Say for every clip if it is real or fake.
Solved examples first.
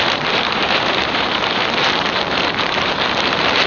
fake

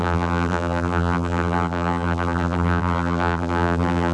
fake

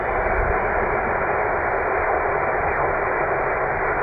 fake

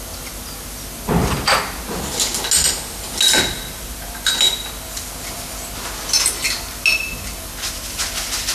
real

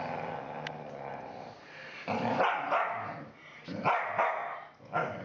real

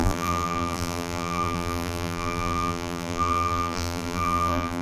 fake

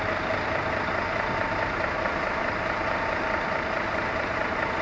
fake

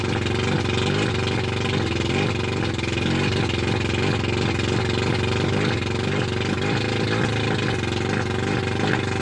real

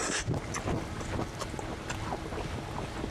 real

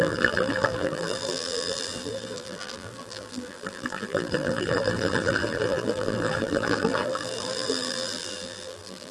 fake